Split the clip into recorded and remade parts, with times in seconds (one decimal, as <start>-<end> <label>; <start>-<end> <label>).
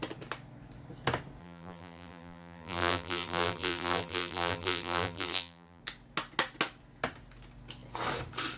0.0-1.4 recorded; 1.4-5.8 remade; 5.8-8.6 recorded